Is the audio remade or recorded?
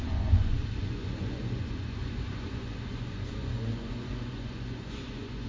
remade